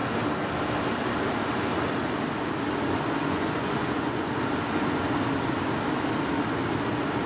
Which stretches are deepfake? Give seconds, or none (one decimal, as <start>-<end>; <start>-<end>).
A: 3.2-4.3